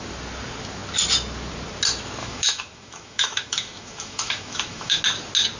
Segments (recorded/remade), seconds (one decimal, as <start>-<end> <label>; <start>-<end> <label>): 0.0-2.2 recorded; 2.2-5.0 remade; 5.0-5.6 recorded

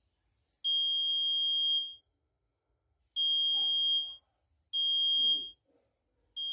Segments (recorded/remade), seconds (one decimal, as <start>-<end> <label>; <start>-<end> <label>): 0.0-1.8 recorded; 1.8-3.0 remade; 3.0-6.5 recorded

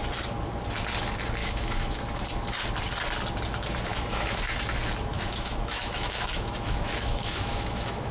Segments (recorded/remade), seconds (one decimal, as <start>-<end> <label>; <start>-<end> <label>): 0.0-1.4 recorded; 1.4-2.0 remade; 2.0-3.9 recorded; 3.9-4.4 remade; 4.4-5.1 recorded; 5.1-8.1 remade

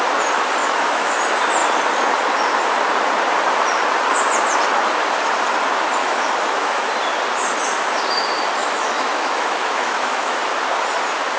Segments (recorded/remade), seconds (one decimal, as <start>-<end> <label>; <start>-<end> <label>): 0.0-0.6 recorded; 0.6-1.2 remade; 1.2-6.0 recorded; 6.0-6.9 remade; 6.9-8.6 recorded; 8.6-10.4 remade; 10.4-11.4 recorded

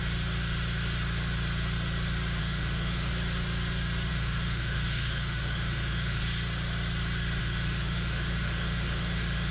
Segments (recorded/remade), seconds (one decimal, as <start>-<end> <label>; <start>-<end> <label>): 0.0-2.4 recorded; 2.4-3.1 remade; 3.1-4.1 recorded; 4.1-6.2 remade; 6.2-7.4 recorded; 7.4-9.5 remade